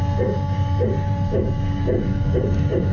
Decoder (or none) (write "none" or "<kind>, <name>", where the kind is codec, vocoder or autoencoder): none